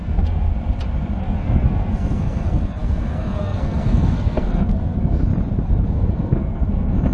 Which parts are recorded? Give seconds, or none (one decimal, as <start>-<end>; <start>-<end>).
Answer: 0.5-1.2; 5.3-5.8